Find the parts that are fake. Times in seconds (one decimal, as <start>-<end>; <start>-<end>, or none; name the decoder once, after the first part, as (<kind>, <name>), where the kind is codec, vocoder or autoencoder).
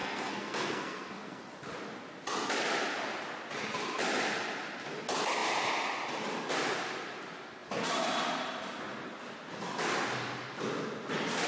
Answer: 0.0-1.5 (codec, SNAC)